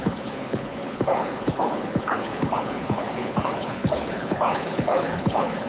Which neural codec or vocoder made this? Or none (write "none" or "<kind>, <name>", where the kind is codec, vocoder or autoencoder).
codec, HILCodec